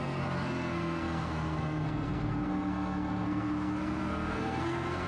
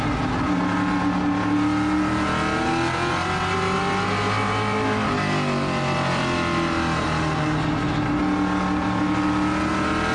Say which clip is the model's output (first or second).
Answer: first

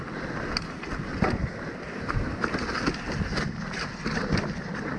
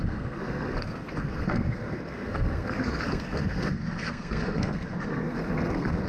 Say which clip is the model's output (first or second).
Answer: second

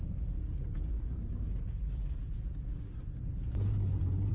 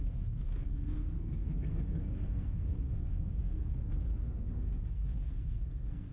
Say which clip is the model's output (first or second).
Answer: second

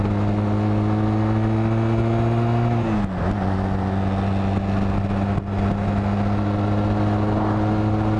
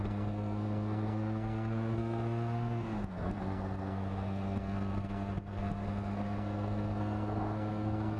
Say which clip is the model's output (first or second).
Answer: second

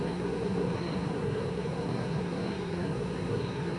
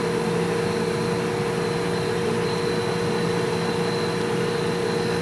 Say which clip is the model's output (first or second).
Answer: first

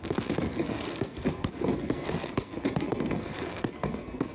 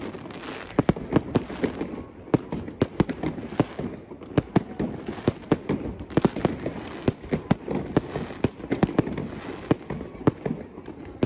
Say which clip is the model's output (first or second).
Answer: first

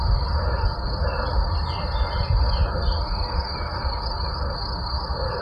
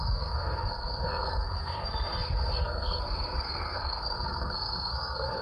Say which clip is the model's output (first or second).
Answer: second